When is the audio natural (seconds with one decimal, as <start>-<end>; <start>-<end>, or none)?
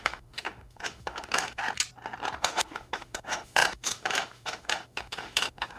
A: 1.6-2.4